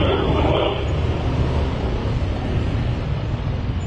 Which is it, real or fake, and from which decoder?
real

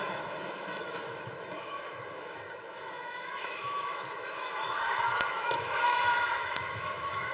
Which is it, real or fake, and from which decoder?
fake, autoencoder, DAC-VAE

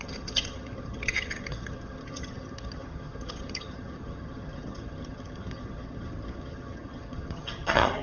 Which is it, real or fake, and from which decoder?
fake, vocoder, HiFi-GAN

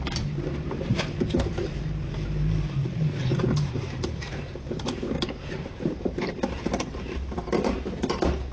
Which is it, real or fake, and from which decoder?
fake, vocoder, BigVGAN v2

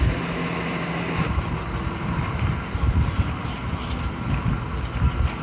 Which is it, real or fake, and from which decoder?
real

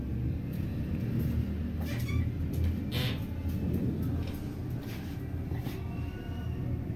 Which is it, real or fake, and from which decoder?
real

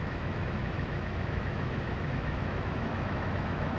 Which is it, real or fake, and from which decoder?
fake, autoencoder, DAC-VAE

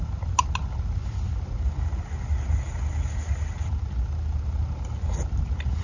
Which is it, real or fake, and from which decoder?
real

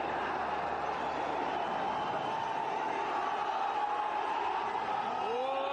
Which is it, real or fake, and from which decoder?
real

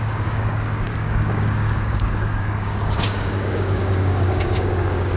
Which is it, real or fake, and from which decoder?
fake, codec, DAC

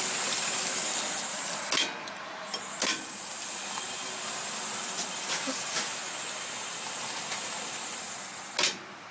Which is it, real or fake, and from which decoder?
real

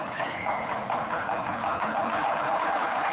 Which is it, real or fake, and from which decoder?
fake, codec, HILCodec